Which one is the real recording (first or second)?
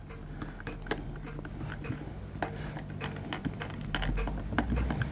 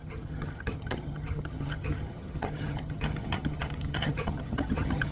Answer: first